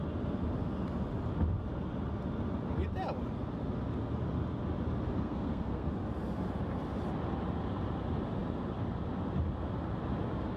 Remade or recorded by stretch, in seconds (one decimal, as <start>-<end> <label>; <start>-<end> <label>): 0.0-5.1 recorded; 5.1-5.9 remade; 5.9-10.6 recorded